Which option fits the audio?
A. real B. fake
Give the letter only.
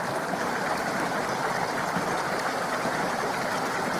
A